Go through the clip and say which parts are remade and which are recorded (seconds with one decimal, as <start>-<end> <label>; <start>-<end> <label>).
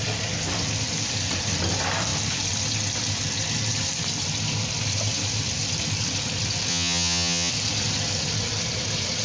0.0-6.7 recorded; 6.7-7.5 remade; 7.5-9.2 recorded